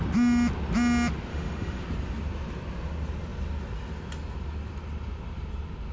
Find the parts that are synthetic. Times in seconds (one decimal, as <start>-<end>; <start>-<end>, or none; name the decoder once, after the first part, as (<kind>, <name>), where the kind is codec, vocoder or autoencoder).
1.3-1.8 (autoencoder, DAC-VAE)